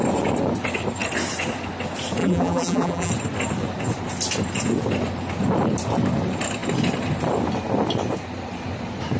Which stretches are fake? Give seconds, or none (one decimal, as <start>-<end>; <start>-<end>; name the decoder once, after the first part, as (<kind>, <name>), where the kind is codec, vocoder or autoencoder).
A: 2.2-3.1 (vocoder, BigVGAN v2)